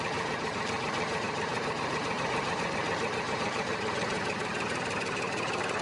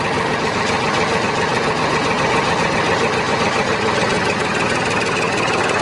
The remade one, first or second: first